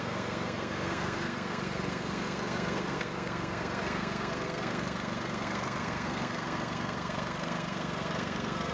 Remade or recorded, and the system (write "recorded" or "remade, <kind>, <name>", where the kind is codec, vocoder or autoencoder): remade, codec, SNAC